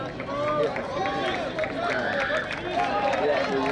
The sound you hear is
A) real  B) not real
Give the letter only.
A